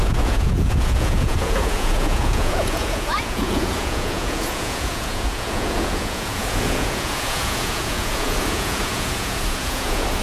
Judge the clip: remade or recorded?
remade